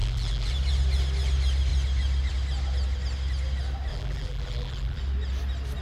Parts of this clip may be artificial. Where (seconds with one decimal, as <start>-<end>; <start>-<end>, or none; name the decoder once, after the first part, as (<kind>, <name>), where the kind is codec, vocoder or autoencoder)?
0.0-0.5 (vocoder, BigVGAN v2); 3.9-5.0